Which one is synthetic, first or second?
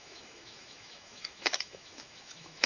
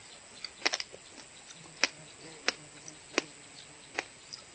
first